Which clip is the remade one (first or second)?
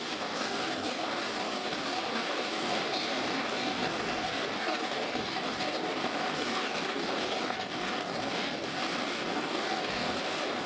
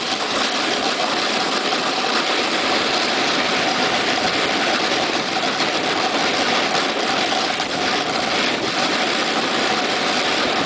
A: first